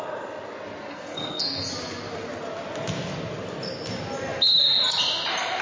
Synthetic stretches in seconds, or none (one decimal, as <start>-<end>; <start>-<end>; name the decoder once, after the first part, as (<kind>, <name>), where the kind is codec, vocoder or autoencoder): 0.9-1.6 (codec, SNAC)